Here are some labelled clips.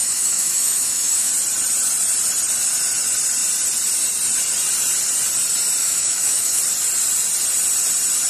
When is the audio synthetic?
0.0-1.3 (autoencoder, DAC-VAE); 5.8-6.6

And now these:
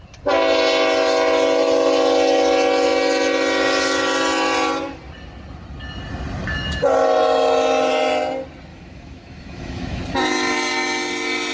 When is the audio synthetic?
8.7-10.0 (autoencoder, DAC-VAE)

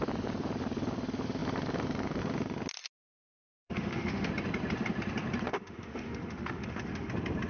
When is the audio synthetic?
3.4-4.3 (autoencoder, DAC-VAE); 5.5-7.1

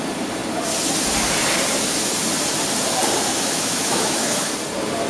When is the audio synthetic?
3.3-4.5 (autoencoder, DAC-VAE)

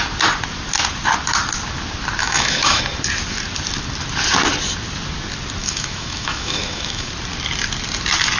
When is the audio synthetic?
2.2-2.8 (autoencoder, DAC-VAE); 5.6-7.1